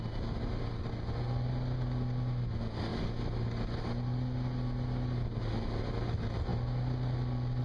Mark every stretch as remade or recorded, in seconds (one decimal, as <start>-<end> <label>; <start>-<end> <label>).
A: 0.0-7.6 recorded